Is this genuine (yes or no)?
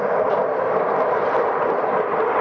yes